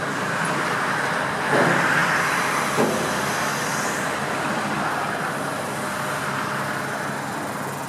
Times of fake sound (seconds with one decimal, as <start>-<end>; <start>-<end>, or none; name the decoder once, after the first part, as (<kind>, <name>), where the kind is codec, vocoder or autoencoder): none